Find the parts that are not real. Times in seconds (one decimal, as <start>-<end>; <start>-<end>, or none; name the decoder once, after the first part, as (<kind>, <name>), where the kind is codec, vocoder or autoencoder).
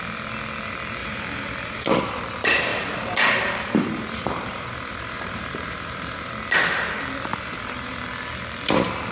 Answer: 1.0-2.0 (vocoder, BigVGAN v2); 2.7-6.3; 7.3-8.0